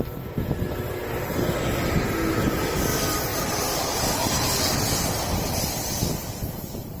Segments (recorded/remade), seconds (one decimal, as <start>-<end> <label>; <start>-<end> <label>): 0.0-7.0 recorded